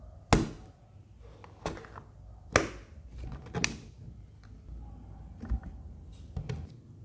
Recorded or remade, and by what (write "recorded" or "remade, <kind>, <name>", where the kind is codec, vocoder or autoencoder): recorded